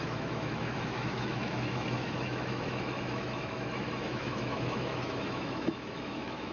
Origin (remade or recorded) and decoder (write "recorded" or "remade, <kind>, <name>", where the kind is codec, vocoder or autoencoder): remade, autoencoder, DAC-VAE